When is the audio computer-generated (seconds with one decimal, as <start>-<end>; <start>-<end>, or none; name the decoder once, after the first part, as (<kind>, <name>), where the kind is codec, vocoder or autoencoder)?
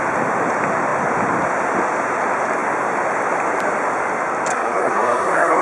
4.5-5.6 (codec, SNAC)